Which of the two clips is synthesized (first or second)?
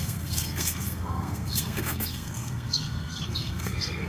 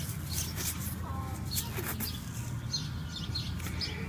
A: first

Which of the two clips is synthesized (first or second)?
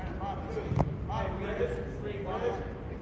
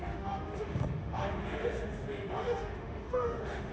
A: second